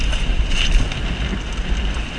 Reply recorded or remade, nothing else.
recorded